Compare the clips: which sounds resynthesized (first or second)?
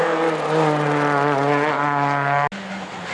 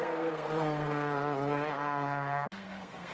second